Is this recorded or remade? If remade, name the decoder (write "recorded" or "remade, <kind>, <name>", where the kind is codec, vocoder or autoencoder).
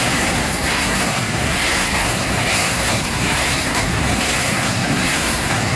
remade, codec, SNAC